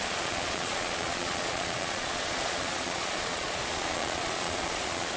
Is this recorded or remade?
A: remade